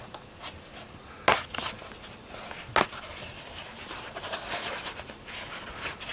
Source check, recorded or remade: recorded